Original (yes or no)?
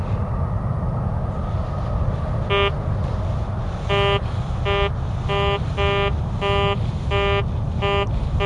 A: yes